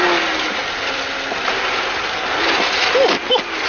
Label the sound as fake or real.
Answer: real